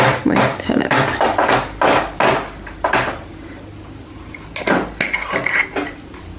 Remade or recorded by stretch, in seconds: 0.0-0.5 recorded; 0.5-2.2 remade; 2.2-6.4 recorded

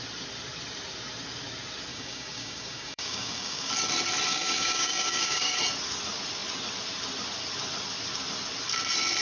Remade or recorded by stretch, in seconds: 0.0-1.9 recorded; 1.9-3.7 remade; 3.7-4.3 recorded; 4.3-5.6 remade; 5.6-9.2 recorded

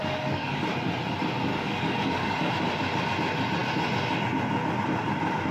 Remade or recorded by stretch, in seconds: 0.0-0.7 remade; 0.7-1.5 recorded; 1.5-2.5 remade; 2.5-5.5 recorded

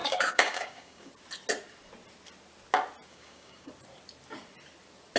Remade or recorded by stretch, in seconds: 0.0-1.1 remade; 1.1-3.1 recorded; 3.1-3.7 remade; 3.7-5.2 recorded

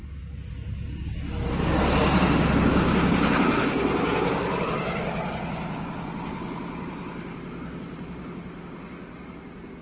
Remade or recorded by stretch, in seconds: 0.0-2.7 recorded; 2.7-4.4 remade; 4.4-9.8 recorded

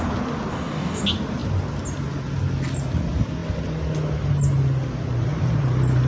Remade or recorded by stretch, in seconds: 0.0-0.5 recorded; 0.5-1.0 remade; 1.0-6.1 recorded

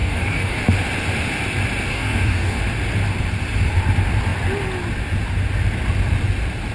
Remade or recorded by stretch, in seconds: 0.0-0.6 remade; 0.6-1.9 recorded; 1.9-2.6 remade; 2.6-6.7 recorded